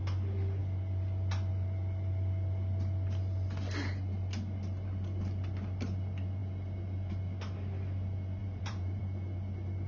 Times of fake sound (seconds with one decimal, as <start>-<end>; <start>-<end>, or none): 8.4-9.0